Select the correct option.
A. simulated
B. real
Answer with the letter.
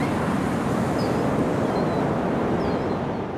B